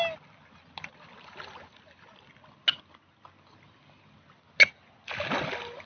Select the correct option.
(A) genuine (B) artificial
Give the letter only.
A